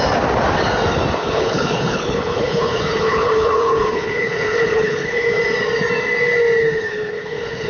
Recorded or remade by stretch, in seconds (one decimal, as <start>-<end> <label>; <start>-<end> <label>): 0.0-1.2 recorded; 1.2-5.3 remade; 5.3-6.6 recorded; 6.6-7.7 remade